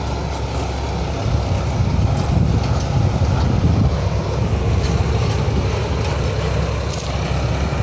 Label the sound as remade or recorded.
recorded